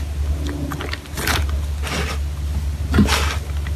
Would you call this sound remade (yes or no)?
no